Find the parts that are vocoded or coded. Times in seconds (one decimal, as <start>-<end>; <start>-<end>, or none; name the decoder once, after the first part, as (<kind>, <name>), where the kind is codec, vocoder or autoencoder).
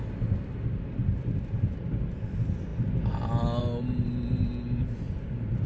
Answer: none